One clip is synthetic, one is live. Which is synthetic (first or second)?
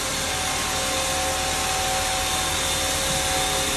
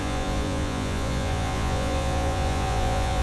second